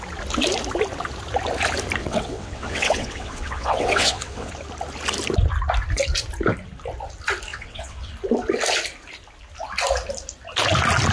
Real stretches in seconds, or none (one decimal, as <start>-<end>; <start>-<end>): 0.0-2.0; 4.5-7.5; 8.1-11.1